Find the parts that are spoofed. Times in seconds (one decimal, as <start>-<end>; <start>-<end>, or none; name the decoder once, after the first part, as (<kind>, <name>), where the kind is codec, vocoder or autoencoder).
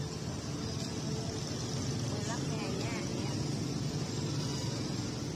none